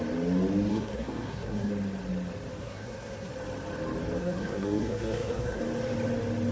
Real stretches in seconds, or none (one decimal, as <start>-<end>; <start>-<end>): 0.0-0.7; 1.7-2.6; 3.3-4.2; 5.6-6.5